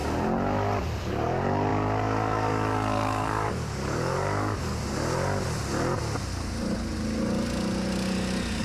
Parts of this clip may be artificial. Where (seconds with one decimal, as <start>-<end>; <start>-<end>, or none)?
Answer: 1.0-4.7